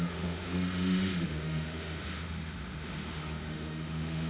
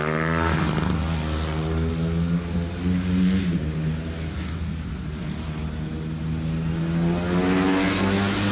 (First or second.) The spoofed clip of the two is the first